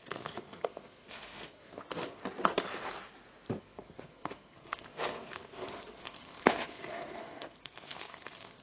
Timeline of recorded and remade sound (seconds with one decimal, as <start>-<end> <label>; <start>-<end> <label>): 0.0-2.2 remade; 2.2-3.6 recorded; 3.6-8.6 remade